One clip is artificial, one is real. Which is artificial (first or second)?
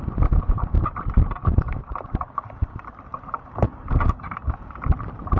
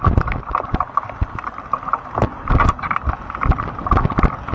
first